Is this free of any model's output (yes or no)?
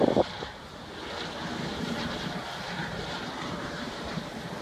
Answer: no